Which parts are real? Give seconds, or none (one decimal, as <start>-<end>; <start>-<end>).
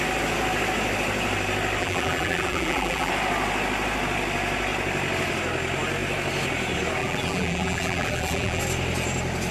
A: 0.0-1.8; 3.1-7.0; 8.6-9.5